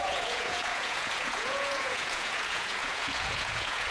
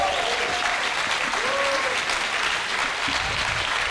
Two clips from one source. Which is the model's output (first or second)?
first